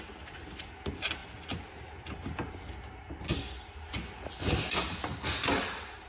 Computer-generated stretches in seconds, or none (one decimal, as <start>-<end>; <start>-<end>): none